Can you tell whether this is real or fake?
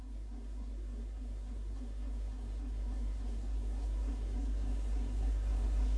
fake